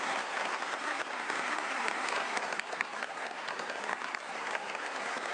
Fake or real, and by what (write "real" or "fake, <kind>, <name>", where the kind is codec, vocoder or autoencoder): fake, codec, SNAC